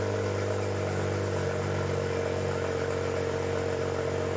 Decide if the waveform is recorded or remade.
recorded